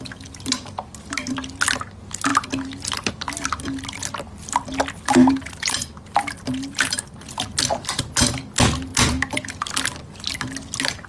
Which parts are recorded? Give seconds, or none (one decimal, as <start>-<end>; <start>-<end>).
0.0-11.1